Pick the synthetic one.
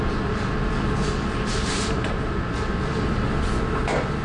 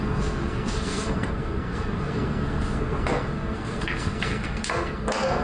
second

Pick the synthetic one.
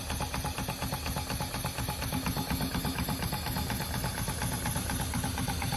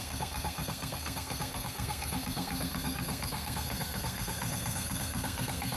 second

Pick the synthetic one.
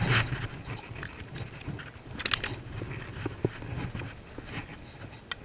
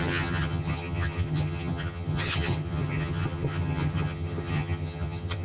second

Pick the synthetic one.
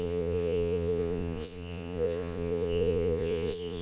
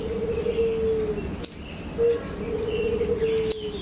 first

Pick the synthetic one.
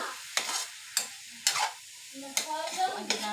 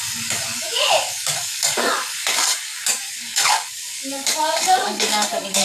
second